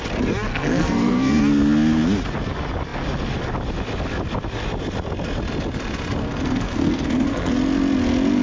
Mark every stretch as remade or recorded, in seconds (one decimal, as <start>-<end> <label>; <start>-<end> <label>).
0.0-0.5 recorded; 0.5-1.4 remade; 1.4-6.2 recorded; 6.2-7.5 remade; 7.5-8.4 recorded